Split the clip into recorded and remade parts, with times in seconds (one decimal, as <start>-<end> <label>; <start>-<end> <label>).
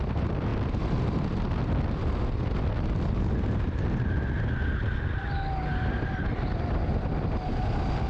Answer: 0.0-8.1 recorded